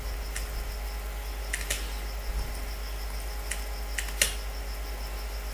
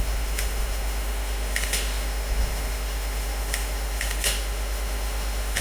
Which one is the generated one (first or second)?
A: second